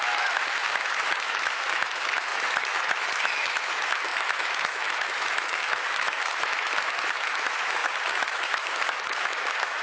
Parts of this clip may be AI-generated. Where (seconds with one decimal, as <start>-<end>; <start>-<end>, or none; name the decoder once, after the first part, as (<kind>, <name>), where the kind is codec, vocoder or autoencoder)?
0.0-9.8 (autoencoder, DAC-VAE)